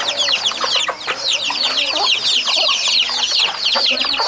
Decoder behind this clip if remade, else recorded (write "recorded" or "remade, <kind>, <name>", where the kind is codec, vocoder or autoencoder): recorded